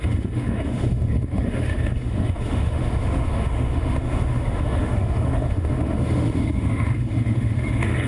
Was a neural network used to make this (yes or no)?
yes